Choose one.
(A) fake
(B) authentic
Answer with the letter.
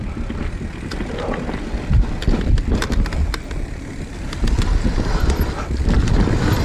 B